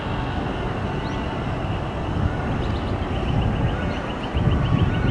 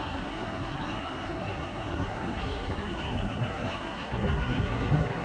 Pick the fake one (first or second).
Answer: second